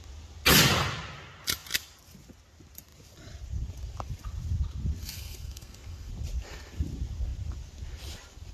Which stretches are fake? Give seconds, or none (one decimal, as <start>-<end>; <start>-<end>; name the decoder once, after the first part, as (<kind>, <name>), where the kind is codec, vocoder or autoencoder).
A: 5.0-6.1 (codec, SNAC)